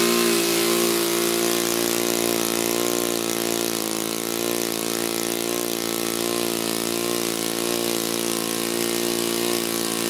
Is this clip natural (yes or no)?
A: yes